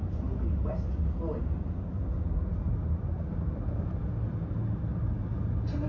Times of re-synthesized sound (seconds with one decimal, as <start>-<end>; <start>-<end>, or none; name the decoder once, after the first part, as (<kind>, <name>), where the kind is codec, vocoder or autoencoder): none